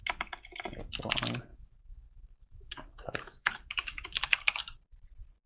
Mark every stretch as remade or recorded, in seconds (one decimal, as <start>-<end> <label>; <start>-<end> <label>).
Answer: 0.0-1.5 recorded; 1.5-4.8 remade; 4.8-5.5 recorded